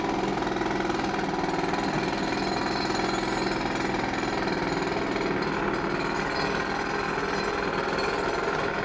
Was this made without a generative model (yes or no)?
yes